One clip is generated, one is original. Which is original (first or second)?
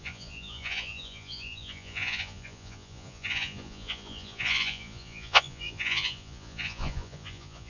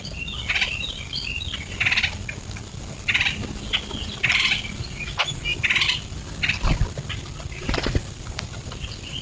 second